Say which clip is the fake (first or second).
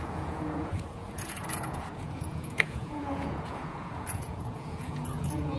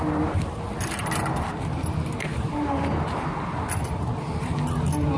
first